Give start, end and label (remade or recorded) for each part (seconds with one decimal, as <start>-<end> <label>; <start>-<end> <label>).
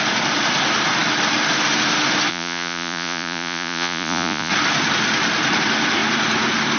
0.0-2.3 recorded; 2.3-4.5 remade; 4.5-6.8 recorded